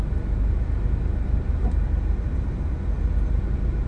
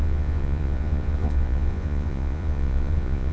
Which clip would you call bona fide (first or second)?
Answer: first